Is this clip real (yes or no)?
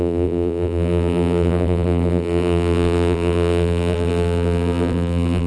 no